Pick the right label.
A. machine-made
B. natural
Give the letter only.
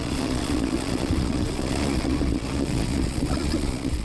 A